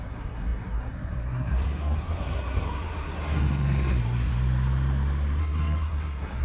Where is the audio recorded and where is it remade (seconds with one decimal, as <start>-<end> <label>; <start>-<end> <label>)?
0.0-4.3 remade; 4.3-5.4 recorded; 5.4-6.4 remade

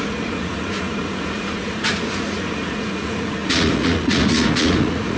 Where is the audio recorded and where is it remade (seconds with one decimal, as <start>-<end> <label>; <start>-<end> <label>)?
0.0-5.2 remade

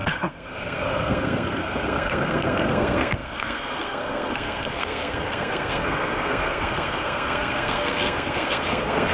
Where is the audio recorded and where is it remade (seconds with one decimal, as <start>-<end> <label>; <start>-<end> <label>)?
0.0-9.1 remade